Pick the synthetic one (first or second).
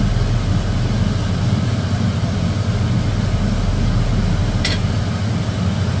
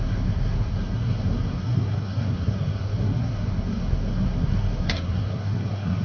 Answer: second